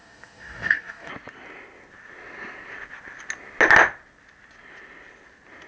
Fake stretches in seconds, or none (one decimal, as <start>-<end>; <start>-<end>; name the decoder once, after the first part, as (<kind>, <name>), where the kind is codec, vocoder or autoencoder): 0.0-1.1 (codec, DAC)